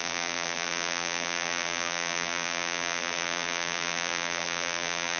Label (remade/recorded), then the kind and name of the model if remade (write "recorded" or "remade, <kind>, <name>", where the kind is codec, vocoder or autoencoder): remade, vocoder, BigVGAN v2